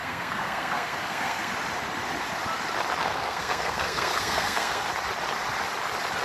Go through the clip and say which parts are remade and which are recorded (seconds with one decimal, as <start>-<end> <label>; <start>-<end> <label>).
0.0-1.5 remade; 1.5-3.0 recorded; 3.0-4.9 remade; 4.9-6.2 recorded